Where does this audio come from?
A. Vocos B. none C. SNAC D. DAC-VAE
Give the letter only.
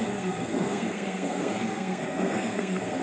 C